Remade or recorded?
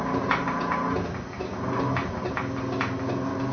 recorded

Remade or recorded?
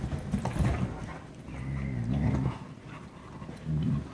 recorded